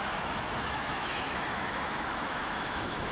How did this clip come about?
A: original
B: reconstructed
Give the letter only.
B